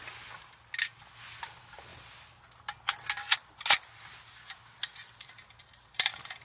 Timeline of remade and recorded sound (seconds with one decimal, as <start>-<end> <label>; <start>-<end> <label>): 0.0-6.4 recorded